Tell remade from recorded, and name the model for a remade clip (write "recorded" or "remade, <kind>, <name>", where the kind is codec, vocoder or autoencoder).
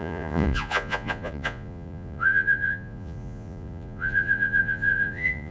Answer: remade, vocoder, Vocos